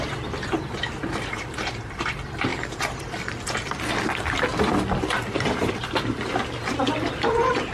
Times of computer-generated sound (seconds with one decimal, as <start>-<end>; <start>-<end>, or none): 2.5-3.0